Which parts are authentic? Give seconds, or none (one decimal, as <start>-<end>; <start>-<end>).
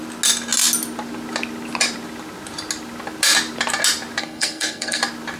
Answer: 0.0-4.2; 5.0-5.4